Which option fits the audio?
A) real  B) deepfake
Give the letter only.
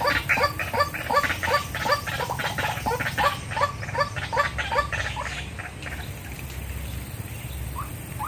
A